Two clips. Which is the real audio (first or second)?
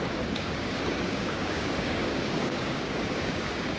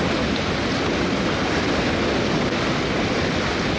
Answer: second